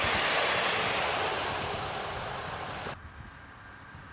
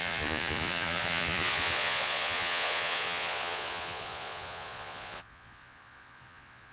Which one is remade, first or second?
second